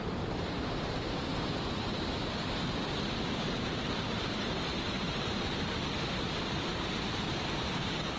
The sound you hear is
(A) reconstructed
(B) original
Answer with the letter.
A